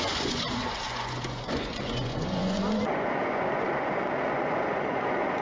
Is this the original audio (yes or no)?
no